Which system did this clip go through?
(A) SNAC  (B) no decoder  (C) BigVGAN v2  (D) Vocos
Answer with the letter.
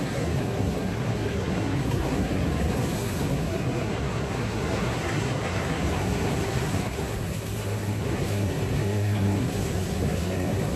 A